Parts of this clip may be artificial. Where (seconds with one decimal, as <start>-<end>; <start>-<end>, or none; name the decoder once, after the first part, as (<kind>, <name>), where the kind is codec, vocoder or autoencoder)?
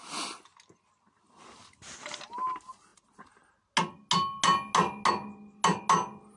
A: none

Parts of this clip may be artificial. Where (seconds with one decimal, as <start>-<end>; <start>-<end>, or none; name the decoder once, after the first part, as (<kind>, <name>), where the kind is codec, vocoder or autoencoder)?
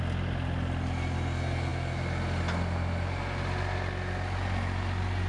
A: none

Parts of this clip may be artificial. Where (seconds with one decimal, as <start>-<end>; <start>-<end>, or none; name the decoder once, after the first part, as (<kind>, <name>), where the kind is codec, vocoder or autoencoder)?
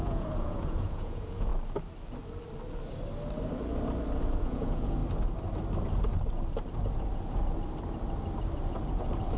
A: 0.0-1.5 (vocoder, Vocos); 4.4-5.0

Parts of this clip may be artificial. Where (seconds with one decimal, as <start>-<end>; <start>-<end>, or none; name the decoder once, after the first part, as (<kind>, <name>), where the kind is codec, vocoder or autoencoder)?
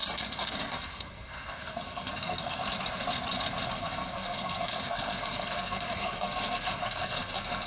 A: 0.0-2.6 (codec, SNAC); 3.7-7.7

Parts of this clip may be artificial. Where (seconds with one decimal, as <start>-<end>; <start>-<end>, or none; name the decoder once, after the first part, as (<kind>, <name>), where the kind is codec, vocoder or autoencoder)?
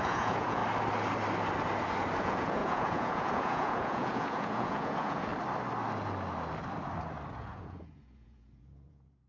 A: 0.0-0.6 (vocoder, Vocos); 2.2-5.3; 7.4-9.3